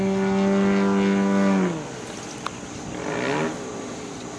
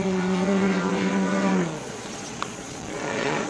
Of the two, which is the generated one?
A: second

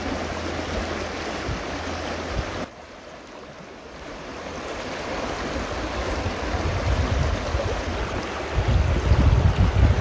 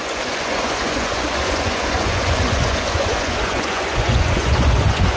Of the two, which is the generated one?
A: second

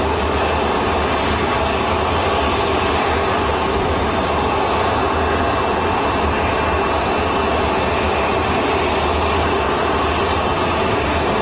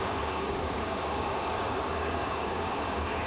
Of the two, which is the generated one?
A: second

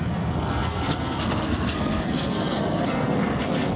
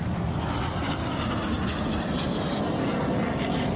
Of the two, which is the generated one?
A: first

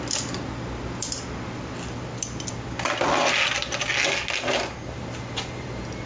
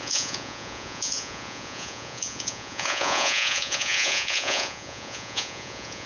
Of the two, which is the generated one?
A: second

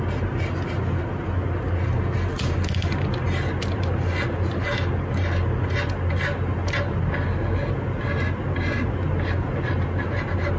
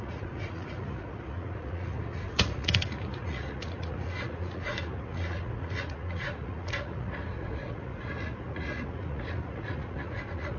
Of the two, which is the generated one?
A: second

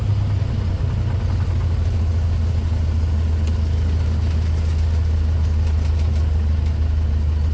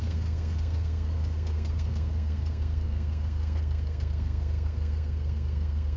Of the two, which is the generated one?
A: second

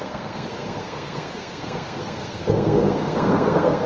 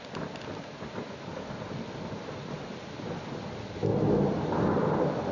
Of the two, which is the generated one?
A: first